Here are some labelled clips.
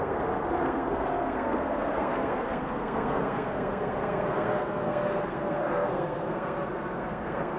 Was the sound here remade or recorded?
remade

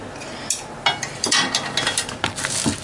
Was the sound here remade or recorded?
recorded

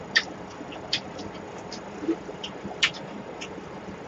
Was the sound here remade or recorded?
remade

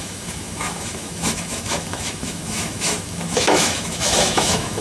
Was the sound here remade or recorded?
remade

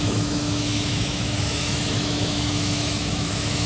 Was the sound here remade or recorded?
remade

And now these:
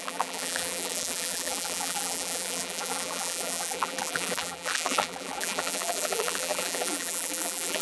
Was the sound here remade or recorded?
remade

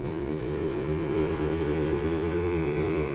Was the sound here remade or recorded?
remade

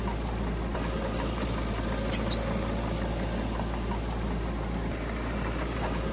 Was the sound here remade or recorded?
recorded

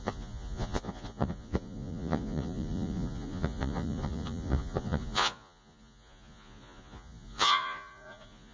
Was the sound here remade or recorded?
remade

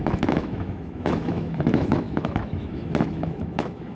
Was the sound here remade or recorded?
remade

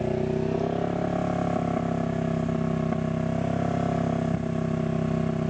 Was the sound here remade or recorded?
recorded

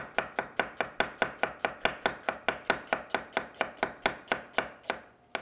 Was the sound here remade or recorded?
recorded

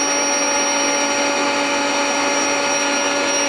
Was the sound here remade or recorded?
recorded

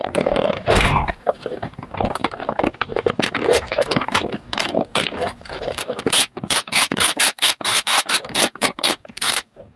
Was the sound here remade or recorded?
remade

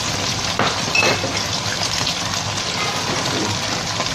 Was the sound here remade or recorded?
recorded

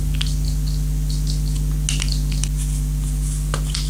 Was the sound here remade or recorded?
recorded